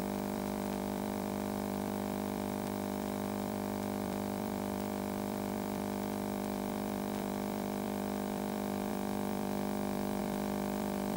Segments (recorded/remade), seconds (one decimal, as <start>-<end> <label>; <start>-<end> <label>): 0.0-11.2 remade